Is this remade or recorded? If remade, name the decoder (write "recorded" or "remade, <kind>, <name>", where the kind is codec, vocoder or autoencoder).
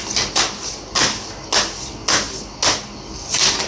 recorded